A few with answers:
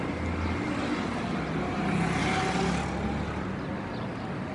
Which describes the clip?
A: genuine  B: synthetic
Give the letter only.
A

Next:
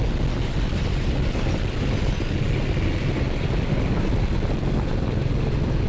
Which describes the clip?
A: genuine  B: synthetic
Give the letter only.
A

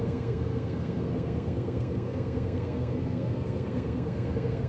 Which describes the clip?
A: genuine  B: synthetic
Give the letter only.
B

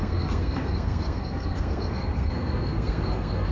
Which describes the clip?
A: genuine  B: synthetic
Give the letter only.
B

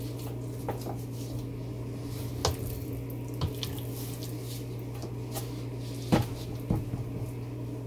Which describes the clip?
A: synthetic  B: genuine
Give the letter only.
B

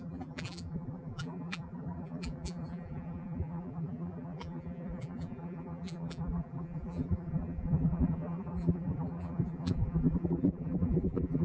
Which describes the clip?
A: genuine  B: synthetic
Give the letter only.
B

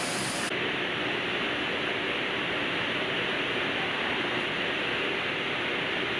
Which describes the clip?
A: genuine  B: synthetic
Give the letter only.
A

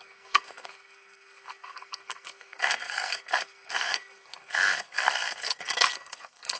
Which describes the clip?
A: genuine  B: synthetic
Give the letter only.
B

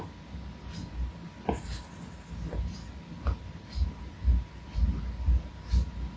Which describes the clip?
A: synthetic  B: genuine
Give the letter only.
B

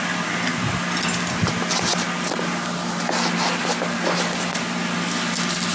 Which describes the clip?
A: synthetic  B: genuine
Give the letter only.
B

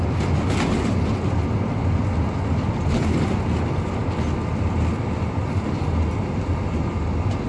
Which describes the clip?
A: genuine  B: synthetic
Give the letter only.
A